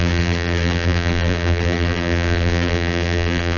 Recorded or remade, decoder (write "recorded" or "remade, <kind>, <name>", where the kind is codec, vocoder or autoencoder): remade, vocoder, BigVGAN v2